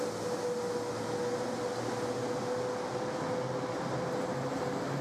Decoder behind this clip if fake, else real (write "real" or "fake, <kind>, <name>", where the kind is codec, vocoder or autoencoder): real